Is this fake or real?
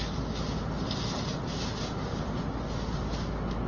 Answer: real